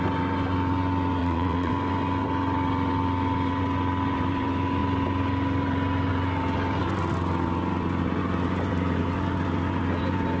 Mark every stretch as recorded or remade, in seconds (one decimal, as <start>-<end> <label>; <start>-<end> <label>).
0.0-1.2 recorded; 1.2-1.7 remade; 1.7-10.4 recorded